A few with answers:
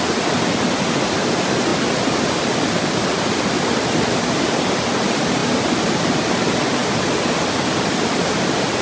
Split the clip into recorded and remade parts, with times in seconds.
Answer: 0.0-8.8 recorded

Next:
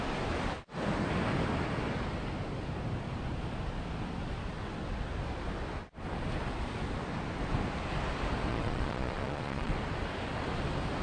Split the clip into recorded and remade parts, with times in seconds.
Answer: 0.0-8.5 recorded; 8.5-9.7 remade; 9.7-11.0 recorded

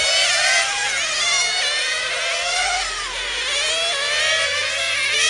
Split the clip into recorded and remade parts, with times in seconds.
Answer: 0.0-5.3 recorded